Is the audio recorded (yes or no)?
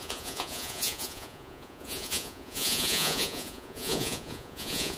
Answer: no